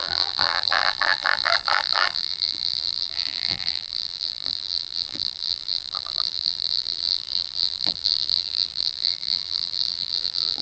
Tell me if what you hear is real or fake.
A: fake